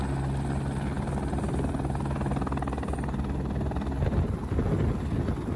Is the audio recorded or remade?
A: recorded